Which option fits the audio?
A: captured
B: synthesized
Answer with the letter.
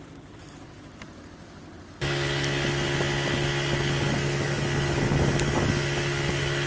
A